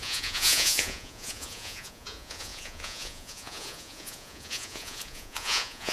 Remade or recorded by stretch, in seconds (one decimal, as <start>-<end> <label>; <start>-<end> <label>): 0.0-5.9 remade